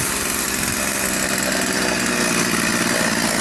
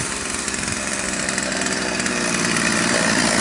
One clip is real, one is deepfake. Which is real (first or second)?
first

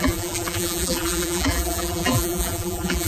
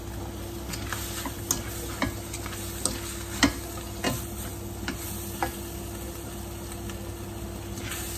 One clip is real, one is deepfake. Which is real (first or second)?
second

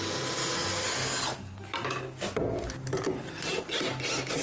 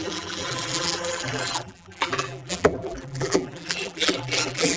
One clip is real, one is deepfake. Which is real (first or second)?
first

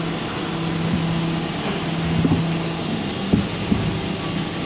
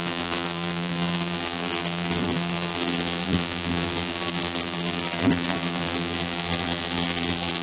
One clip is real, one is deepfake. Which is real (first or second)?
first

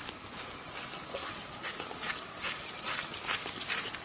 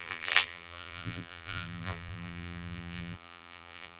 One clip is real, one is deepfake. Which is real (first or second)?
first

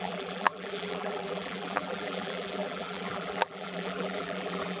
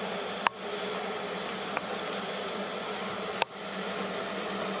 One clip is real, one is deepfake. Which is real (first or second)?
second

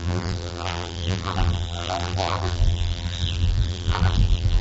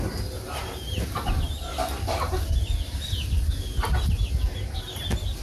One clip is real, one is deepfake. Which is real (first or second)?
second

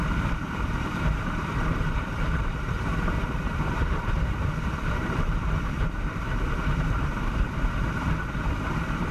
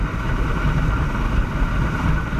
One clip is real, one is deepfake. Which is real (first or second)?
second